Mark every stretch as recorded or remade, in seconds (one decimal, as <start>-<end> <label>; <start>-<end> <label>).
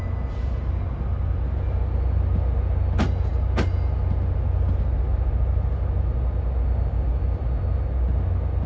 0.0-8.7 recorded